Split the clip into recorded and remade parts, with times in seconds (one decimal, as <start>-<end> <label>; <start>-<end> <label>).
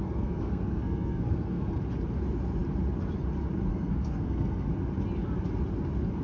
0.0-1.8 remade; 1.8-3.7 recorded; 3.7-4.7 remade; 4.7-6.2 recorded